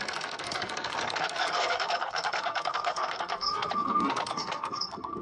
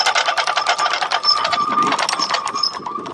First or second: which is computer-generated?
first